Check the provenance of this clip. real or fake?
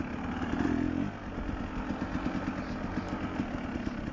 real